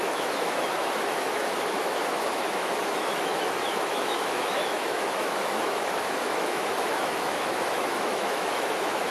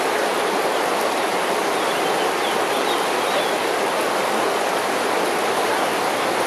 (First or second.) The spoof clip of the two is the first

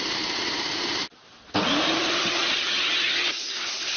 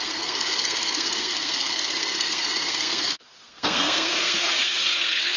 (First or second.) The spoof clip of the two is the second